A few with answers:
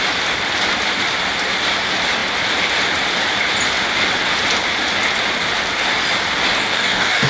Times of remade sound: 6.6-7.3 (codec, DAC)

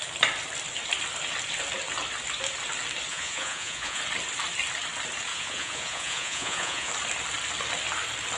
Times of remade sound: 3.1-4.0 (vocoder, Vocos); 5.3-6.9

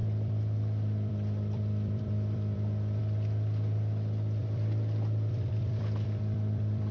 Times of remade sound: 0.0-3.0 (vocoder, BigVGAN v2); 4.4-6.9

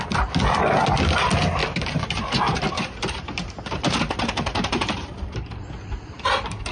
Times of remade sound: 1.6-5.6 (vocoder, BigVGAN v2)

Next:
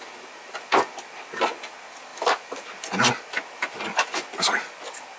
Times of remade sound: none

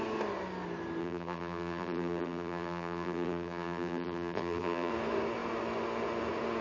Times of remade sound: 1.0-4.9 (vocoder, BigVGAN v2)

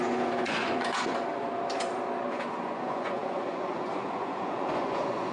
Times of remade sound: 0.0-1.3 (vocoder, Vocos); 2.3-5.3